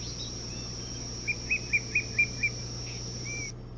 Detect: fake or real real